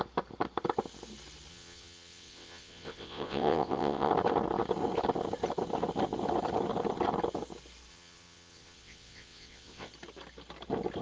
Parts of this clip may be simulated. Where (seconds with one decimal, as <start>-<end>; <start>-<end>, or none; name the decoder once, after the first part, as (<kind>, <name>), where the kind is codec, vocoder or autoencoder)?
1.5-4.1 (vocoder, WaveNeXt); 7.9-9.9